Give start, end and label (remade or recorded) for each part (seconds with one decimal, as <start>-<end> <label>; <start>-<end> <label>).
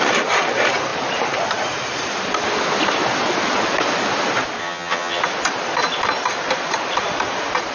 0.0-4.6 recorded; 4.6-5.2 remade; 5.2-7.7 recorded